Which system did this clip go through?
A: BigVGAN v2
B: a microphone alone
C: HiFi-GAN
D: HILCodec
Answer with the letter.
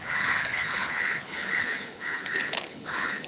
D